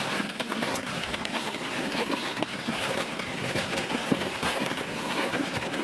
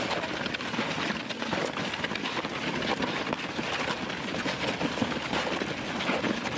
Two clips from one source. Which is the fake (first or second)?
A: first